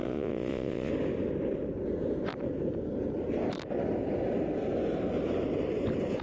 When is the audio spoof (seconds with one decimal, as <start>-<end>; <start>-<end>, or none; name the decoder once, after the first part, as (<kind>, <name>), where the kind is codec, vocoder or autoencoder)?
0.0-0.9 (vocoder, Vocos)